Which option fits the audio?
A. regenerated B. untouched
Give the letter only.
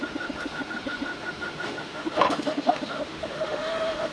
A